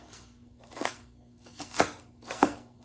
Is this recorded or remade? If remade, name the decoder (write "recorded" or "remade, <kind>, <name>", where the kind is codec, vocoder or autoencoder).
remade, codec, SNAC